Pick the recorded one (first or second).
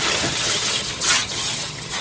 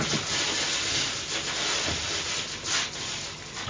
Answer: second